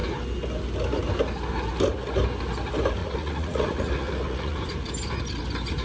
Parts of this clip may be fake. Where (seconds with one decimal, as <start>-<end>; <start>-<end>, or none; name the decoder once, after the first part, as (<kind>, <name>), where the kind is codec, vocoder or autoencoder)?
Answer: 3.0-4.6 (vocoder, Vocos)